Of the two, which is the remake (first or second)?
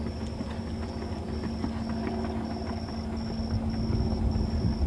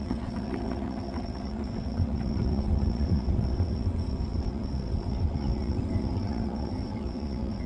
second